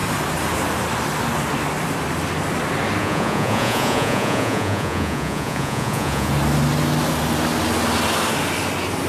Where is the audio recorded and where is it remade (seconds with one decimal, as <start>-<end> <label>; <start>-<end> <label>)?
0.0-3.0 recorded; 3.0-6.3 remade; 6.3-9.1 recorded